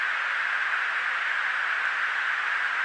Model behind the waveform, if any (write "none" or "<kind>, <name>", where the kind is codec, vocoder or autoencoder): none